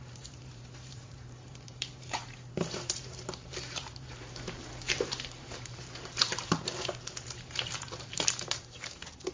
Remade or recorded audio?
remade